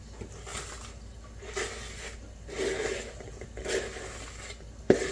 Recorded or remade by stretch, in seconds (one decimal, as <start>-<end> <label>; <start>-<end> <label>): 0.0-5.1 recorded